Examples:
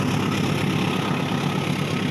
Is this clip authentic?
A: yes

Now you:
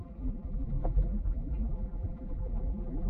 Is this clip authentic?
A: no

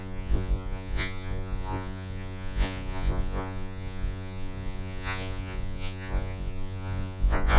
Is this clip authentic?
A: no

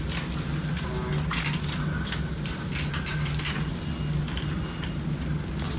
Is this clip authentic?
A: yes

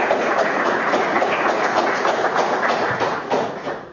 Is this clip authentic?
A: no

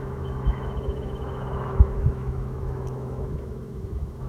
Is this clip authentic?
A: no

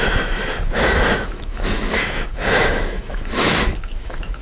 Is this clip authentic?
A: no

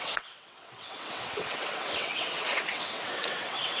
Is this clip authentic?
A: no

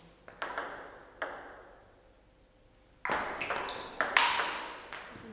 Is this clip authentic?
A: yes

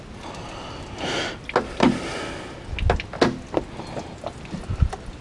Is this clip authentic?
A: yes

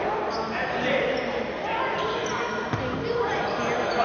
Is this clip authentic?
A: yes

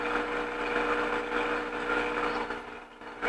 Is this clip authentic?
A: yes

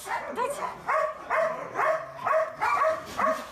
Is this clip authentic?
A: yes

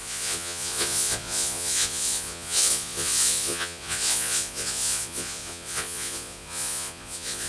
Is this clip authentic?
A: no